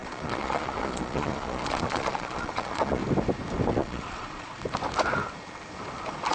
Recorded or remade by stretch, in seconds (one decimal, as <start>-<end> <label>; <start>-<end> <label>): 0.0-3.0 remade; 3.0-3.7 recorded; 3.7-4.5 remade; 4.5-6.3 recorded